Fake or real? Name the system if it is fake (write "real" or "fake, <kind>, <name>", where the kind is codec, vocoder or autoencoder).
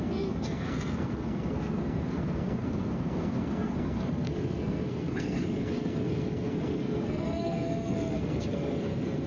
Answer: fake, codec, SNAC